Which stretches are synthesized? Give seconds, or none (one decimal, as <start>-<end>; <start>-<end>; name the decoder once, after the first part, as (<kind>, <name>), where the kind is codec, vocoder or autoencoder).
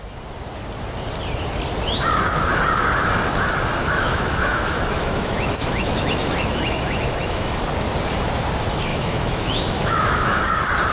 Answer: 3.8-7.6 (autoencoder, DAC-VAE); 8.9-10.4